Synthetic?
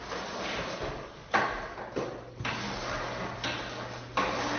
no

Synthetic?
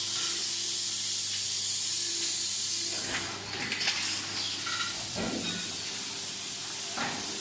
no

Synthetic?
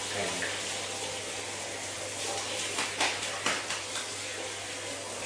no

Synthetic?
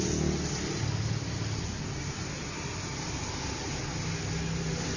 no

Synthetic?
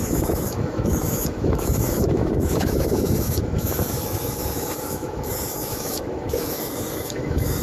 yes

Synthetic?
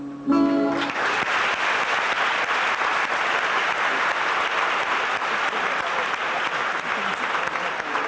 no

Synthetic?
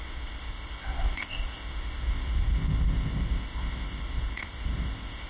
yes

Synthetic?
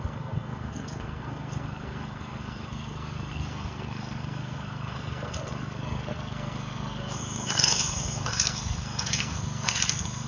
yes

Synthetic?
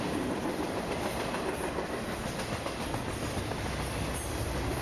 no